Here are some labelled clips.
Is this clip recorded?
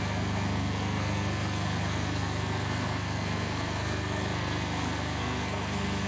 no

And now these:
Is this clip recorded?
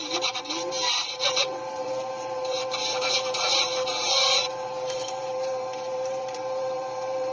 no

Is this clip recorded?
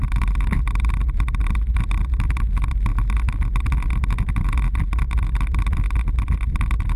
yes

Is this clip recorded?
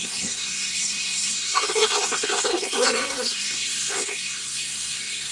no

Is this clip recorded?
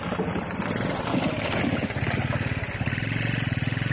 yes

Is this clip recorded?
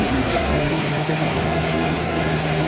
no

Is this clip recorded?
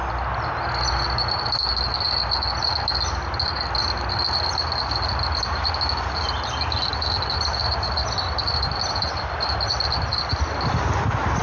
yes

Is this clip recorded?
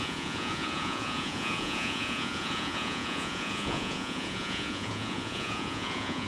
no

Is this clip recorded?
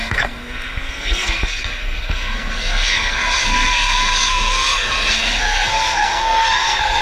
no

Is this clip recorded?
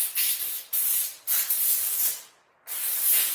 yes